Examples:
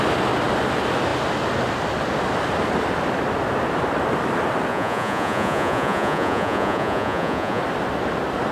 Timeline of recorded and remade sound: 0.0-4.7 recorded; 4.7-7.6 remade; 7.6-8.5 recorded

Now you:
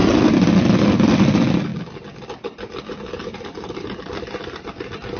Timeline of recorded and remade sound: 0.0-5.2 recorded

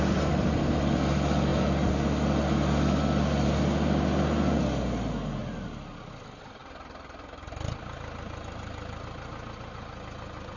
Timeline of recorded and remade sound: 0.0-10.6 recorded

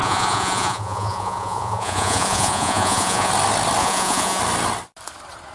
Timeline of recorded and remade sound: 0.0-3.3 remade; 3.3-3.8 recorded; 3.8-4.4 remade; 4.4-5.5 recorded

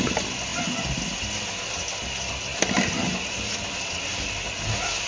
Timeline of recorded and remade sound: 0.0-5.1 recorded

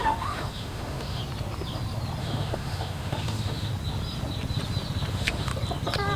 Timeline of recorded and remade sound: 0.0-1.2 remade; 1.2-2.2 recorded; 2.2-3.7 remade; 3.7-5.1 recorded; 5.1-5.5 remade; 5.5-6.2 recorded